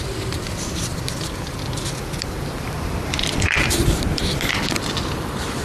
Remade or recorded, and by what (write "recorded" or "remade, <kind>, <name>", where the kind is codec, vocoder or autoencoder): remade, vocoder, BigVGAN v2